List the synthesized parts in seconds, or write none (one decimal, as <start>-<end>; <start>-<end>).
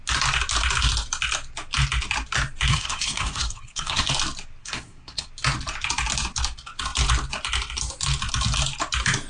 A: 2.7-4.1; 4.6-5.3